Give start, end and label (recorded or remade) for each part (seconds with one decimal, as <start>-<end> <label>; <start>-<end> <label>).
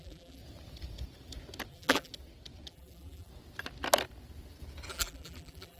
0.0-0.4 remade; 0.4-1.7 recorded; 1.7-2.1 remade; 2.1-2.7 recorded; 2.7-3.3 remade; 3.3-4.9 recorded; 4.9-5.8 remade